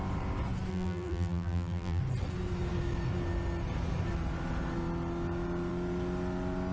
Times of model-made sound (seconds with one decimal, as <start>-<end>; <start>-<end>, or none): 0.7-2.0